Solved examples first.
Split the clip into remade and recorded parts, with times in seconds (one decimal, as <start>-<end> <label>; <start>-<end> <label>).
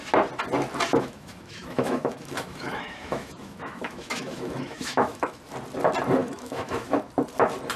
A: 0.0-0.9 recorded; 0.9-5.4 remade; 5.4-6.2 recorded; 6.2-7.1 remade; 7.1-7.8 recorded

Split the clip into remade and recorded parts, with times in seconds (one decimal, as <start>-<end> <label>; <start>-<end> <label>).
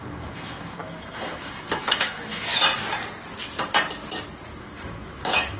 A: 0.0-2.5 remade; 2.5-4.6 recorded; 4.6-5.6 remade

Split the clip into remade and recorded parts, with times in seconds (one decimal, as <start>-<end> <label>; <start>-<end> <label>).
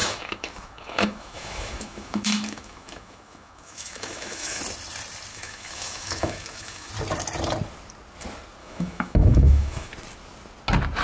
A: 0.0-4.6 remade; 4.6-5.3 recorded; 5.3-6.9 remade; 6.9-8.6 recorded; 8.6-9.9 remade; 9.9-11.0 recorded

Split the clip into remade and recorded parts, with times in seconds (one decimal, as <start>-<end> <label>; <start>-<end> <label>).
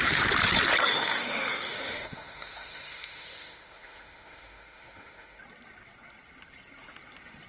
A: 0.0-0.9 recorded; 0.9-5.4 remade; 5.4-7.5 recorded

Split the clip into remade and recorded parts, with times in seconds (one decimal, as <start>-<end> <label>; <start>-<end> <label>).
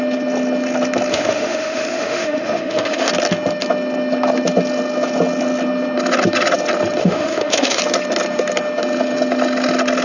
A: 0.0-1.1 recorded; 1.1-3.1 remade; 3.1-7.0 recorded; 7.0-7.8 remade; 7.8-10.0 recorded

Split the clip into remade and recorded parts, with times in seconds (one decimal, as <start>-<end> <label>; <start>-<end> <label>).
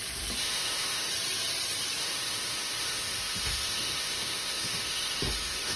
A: 0.0-0.4 recorded; 0.4-1.1 remade; 1.1-2.0 recorded; 2.0-5.8 remade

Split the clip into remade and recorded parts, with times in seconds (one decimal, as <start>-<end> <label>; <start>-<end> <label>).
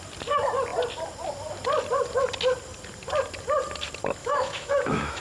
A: 0.0-4.2 recorded; 4.2-5.2 remade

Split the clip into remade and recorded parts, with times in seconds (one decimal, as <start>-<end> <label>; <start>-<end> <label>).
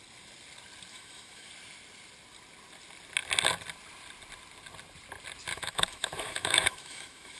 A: 0.0-0.9 recorded; 0.9-1.5 remade; 1.5-5.5 recorded; 5.5-7.4 remade